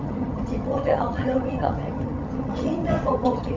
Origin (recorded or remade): remade